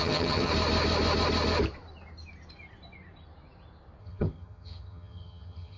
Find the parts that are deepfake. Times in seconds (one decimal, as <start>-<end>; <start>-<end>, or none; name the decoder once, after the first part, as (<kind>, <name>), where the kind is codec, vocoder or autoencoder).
0.0-0.5 (vocoder, HiFi-GAN); 4.0-5.8